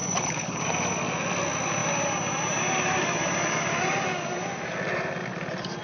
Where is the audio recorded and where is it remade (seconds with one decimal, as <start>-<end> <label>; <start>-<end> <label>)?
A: 0.0-0.6 remade; 0.6-5.8 recorded